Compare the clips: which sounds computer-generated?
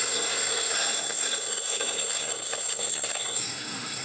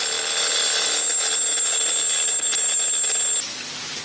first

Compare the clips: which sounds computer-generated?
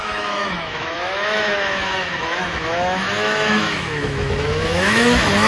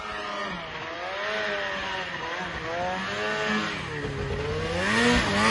first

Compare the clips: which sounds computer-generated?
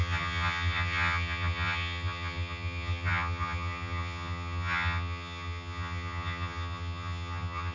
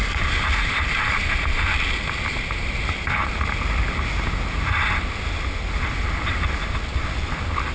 first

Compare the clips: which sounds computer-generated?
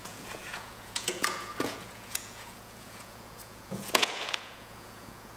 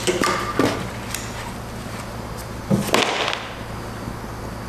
first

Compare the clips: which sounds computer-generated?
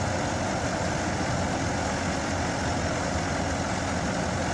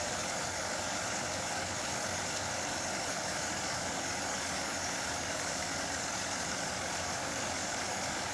second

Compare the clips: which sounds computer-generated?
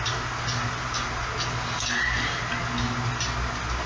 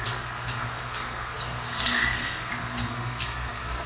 second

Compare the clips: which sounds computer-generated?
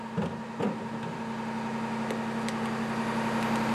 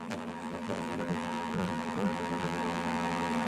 second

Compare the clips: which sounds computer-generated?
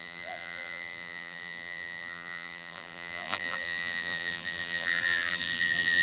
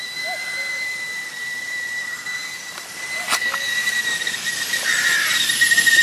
first